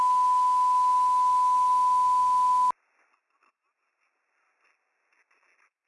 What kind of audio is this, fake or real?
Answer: real